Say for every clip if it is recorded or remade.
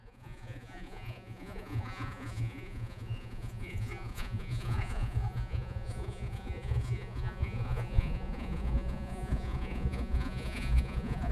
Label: remade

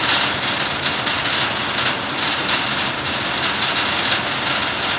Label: recorded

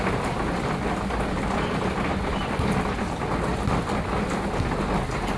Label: recorded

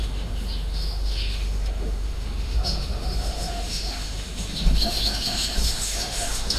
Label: remade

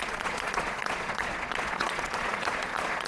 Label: remade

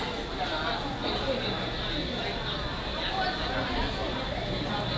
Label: recorded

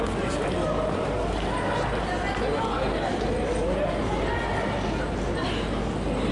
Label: recorded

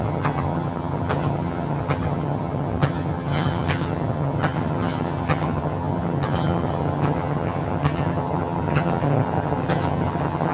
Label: remade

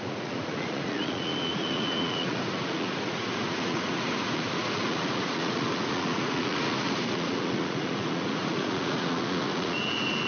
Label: remade